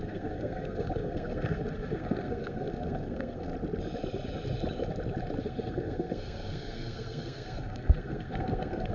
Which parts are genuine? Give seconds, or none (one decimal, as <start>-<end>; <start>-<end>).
3.5-5.4